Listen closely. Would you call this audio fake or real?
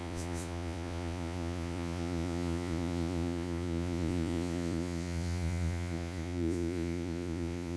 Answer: fake